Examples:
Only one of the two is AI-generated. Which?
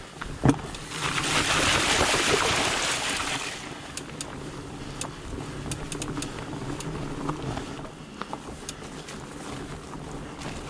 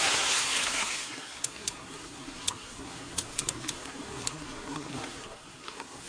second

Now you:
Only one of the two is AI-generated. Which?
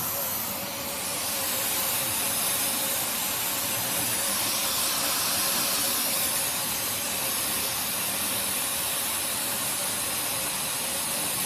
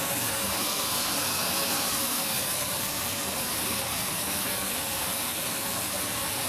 second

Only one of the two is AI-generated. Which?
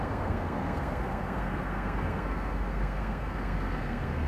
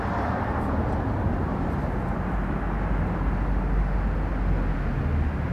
first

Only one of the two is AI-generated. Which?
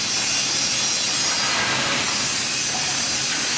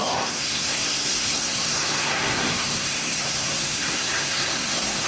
second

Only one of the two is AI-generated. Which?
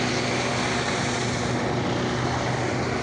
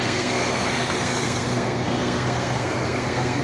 second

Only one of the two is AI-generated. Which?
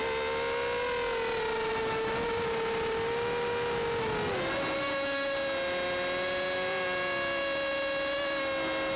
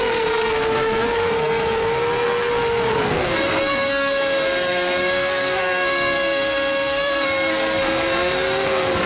second